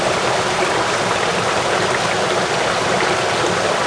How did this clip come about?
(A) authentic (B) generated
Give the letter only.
A